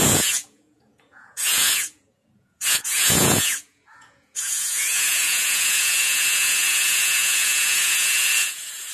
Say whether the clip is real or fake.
fake